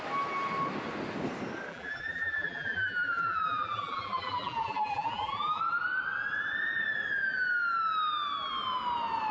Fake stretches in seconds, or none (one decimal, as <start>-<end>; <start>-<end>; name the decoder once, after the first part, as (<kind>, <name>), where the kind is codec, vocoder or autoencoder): 1.7-5.6 (vocoder, BigVGAN v2)